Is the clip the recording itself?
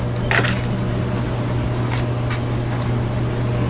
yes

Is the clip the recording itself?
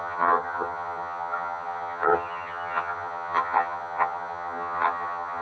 no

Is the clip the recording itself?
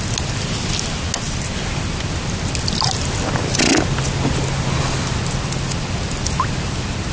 yes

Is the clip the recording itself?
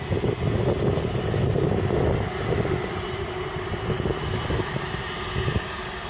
yes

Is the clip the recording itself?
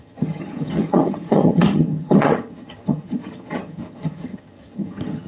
no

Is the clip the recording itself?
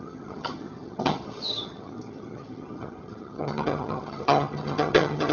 no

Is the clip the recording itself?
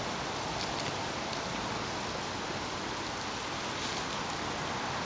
yes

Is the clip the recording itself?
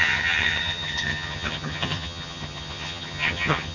no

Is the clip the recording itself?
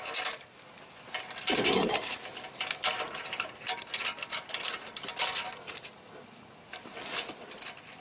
yes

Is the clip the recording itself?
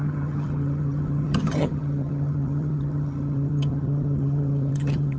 no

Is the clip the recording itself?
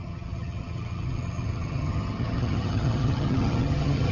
no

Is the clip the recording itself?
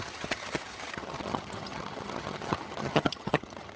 no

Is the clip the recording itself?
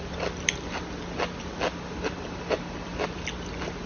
yes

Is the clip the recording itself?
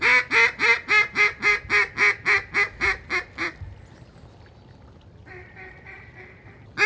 yes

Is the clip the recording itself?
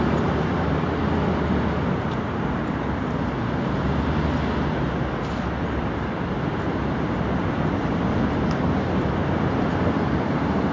yes